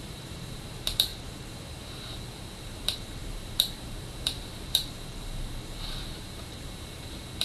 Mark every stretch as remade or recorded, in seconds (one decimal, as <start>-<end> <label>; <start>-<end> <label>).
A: 0.0-1.1 remade; 1.1-2.6 recorded; 2.6-7.4 remade